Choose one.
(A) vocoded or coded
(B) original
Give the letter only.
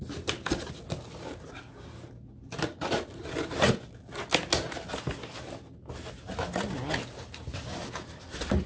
B